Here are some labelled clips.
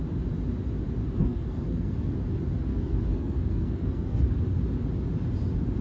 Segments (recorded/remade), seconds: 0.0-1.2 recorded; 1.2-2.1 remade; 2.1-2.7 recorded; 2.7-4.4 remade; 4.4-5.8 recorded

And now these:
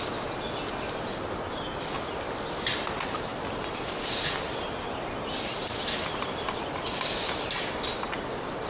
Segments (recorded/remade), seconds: 0.0-8.7 recorded

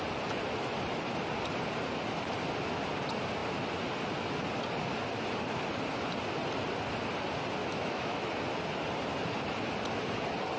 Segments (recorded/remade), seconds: 0.0-7.6 recorded; 7.6-8.3 remade; 8.3-10.6 recorded

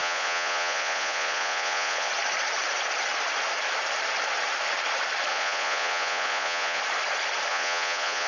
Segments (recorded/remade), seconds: 0.0-2.1 remade; 2.1-5.3 recorded; 5.3-6.8 remade; 6.8-7.5 recorded; 7.5-8.3 remade